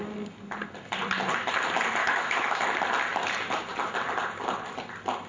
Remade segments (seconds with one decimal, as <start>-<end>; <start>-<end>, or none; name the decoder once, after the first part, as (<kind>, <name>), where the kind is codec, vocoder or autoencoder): 2.0-2.6 (autoencoder, DAC-VAE)